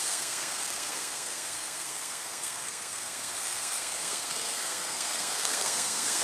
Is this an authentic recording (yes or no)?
no